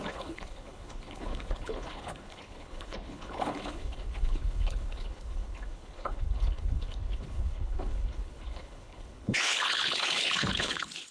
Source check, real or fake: fake